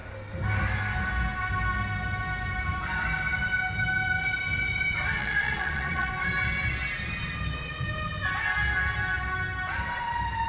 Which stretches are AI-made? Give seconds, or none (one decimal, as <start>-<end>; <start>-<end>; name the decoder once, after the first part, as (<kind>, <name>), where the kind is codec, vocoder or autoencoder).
5.2-6.1 (vocoder, Vocos)